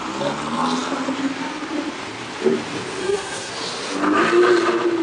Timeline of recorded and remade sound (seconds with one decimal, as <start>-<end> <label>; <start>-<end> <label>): 0.0-3.0 recorded; 3.0-3.5 remade; 3.5-5.0 recorded